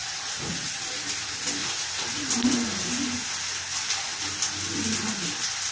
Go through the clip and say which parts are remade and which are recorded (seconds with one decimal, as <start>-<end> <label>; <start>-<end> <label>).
0.0-0.7 remade; 0.7-1.6 recorded; 1.6-2.3 remade; 2.3-5.7 recorded